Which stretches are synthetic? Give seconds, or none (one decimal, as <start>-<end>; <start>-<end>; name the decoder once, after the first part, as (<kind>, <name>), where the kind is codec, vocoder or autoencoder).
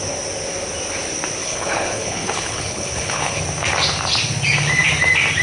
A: 1.4-3.4 (codec, HILCodec)